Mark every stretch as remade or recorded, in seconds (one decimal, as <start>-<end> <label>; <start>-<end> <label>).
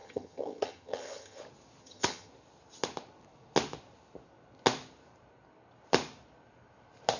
0.0-1.4 remade; 1.4-1.8 recorded; 1.8-2.3 remade; 2.3-7.2 recorded